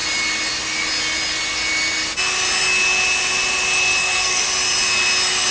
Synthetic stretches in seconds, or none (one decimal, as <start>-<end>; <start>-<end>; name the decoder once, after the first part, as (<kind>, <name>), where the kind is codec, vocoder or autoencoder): 4.0-4.5 (codec, SNAC)

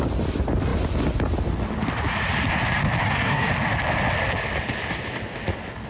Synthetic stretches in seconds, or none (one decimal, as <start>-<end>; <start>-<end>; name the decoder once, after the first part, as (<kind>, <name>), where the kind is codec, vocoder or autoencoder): 3.0-3.5 (codec, SNAC)

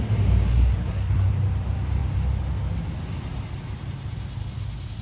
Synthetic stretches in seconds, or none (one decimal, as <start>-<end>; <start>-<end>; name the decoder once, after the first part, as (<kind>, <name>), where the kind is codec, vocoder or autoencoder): 0.5-1.3 (codec, SNAC)